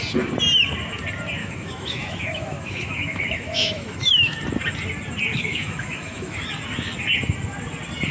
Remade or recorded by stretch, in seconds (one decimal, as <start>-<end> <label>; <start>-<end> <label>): 0.0-1.4 recorded; 1.4-4.4 remade; 4.4-5.3 recorded; 5.3-6.4 remade; 6.4-8.1 recorded